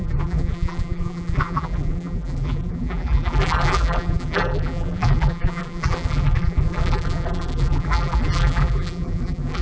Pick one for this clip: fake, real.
fake